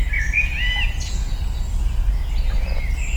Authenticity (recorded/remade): recorded